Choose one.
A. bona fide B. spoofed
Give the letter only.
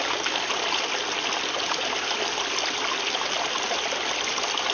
A